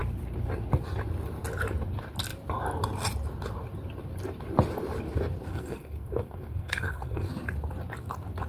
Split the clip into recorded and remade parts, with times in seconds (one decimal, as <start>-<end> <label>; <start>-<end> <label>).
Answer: 0.0-5.5 recorded; 5.5-7.3 remade; 7.3-8.5 recorded